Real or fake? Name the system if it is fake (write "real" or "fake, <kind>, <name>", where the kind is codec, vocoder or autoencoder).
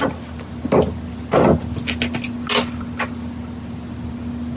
real